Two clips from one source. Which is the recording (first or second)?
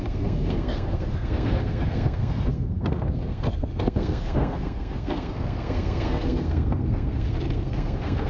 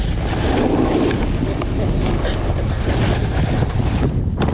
second